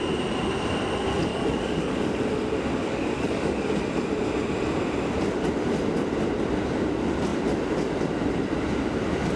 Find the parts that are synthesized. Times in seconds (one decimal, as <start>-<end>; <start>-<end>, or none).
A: 1.3-2.4; 2.8-3.8